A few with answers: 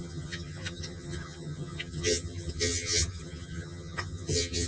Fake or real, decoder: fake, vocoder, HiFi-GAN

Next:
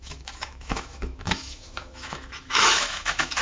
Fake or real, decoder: fake, autoencoder, DAC-VAE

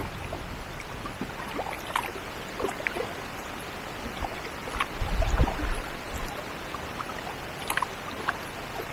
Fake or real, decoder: real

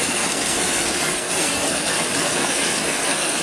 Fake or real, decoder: fake, codec, SNAC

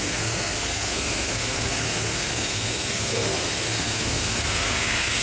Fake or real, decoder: fake, codec, SNAC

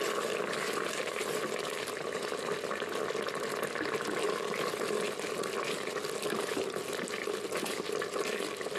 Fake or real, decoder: real